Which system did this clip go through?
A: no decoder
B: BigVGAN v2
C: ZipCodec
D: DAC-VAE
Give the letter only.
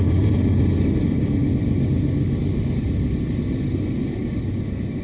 A